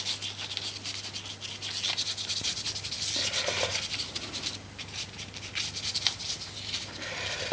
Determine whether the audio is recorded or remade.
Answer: recorded